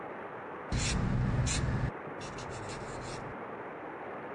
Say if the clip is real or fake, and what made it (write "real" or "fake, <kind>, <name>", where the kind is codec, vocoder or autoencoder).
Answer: real